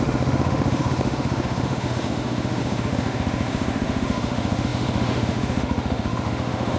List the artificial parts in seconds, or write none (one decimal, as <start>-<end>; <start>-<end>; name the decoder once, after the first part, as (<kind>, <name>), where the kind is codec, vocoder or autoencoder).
0.0-6.8 (autoencoder, DAC-VAE)